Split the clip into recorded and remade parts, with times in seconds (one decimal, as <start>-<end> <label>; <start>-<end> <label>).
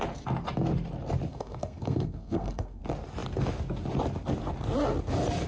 0.0-1.3 recorded; 1.3-2.8 remade; 2.8-5.5 recorded